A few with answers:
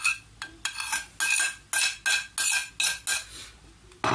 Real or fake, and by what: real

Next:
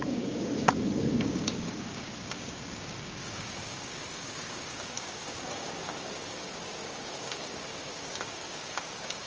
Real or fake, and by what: fake, codec, DAC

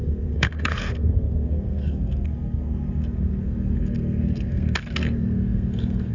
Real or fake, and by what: fake, codec, SNAC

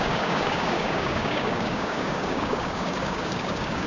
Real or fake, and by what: fake, codec, DAC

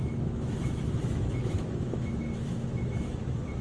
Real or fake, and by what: fake, autoencoder, DAC-VAE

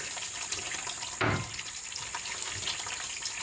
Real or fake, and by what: real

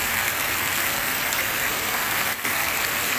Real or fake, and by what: fake, codec, SNAC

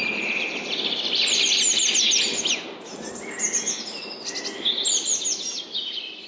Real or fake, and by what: real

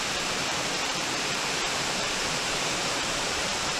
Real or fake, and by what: fake, vocoder, BigVGAN v2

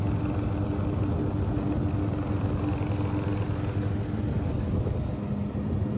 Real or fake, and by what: real